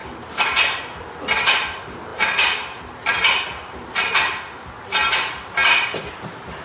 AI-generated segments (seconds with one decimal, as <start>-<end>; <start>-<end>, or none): none